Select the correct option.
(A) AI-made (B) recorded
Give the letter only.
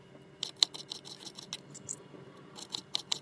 B